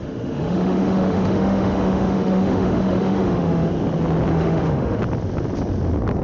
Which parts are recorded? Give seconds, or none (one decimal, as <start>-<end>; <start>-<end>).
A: 3.7-4.3; 5.0-6.2